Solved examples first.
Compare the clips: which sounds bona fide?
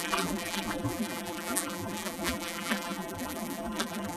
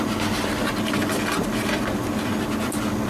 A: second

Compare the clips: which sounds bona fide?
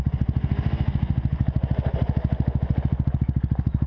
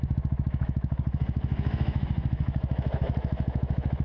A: first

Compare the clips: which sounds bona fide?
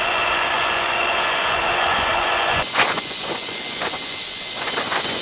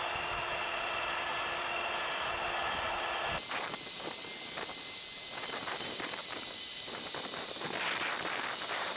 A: second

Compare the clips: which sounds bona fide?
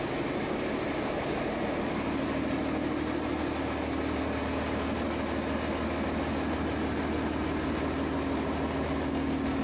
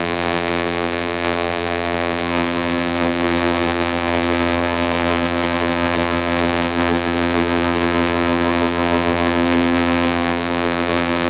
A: first